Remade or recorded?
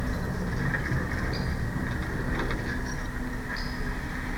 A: recorded